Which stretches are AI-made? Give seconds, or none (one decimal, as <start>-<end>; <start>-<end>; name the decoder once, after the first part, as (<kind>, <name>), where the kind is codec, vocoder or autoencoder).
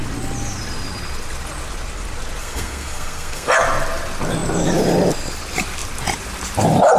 2.4-3.5 (codec, SNAC)